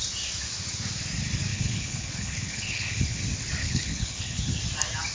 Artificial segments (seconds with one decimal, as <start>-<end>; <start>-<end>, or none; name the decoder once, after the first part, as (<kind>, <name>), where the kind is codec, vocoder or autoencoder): 1.5-3.2 (codec, HILCodec); 3.6-4.6